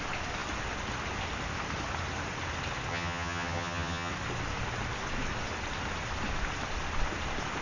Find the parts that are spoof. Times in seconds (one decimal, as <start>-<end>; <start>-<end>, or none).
2.9-4.1